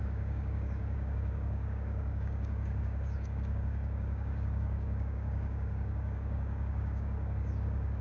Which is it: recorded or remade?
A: remade